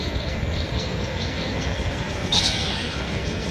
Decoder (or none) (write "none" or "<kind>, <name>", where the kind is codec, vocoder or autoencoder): codec, SNAC